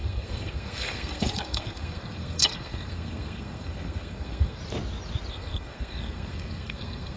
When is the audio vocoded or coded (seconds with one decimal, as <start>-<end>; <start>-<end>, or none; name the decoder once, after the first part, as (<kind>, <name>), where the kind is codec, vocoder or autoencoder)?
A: 0.0-4.6 (codec, SNAC); 5.3-7.2